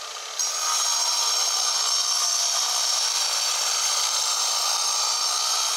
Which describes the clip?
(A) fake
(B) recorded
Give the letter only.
B